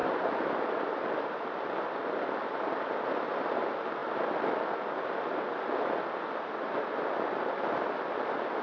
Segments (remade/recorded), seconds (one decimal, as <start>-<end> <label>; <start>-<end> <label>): 0.0-5.5 remade; 5.5-6.6 recorded; 6.6-8.6 remade